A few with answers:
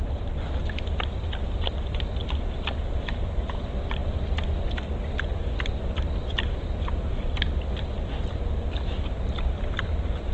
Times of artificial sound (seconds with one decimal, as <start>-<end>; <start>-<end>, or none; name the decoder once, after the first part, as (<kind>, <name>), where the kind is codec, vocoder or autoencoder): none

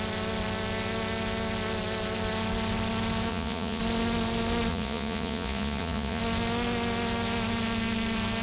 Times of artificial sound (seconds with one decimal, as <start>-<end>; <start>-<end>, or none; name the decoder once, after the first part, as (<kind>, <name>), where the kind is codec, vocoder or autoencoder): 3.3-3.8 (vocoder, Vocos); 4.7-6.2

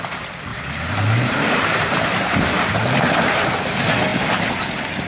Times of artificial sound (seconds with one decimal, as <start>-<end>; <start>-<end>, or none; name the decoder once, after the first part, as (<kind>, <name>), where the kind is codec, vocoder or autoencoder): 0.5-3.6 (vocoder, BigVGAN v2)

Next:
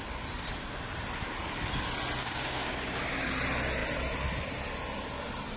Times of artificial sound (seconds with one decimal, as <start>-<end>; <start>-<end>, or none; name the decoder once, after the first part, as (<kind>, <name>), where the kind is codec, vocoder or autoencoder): 2.2-3.3 (codec, DAC)

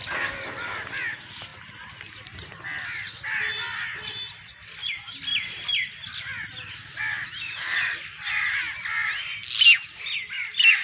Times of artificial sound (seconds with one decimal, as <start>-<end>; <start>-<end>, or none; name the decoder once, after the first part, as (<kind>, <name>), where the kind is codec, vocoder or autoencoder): none

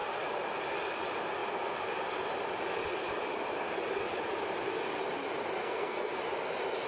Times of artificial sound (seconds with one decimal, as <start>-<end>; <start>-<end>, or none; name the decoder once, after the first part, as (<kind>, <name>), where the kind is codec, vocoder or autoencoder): 5.6-6.2 (codec, SNAC)

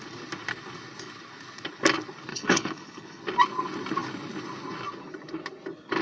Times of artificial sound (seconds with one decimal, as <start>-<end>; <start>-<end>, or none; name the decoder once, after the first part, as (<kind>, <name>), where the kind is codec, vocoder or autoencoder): 2.3-3.2 (codec, HILCodec)

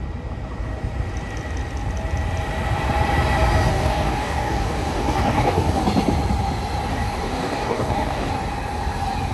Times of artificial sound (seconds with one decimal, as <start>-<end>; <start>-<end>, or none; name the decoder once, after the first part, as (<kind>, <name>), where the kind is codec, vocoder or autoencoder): 3.7-5.8 (codec, DAC); 6.9-8.3